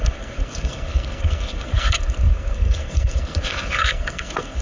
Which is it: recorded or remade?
remade